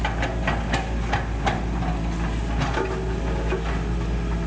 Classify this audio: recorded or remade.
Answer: recorded